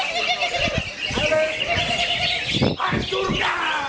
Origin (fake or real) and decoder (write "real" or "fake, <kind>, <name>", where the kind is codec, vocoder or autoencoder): real